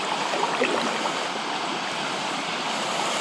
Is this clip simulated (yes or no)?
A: yes